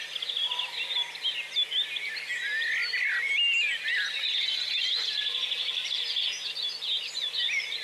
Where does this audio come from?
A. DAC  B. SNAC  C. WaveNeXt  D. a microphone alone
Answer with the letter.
D